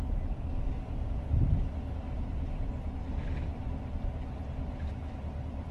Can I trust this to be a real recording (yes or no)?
yes